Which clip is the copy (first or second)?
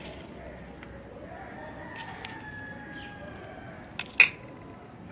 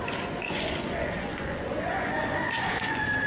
second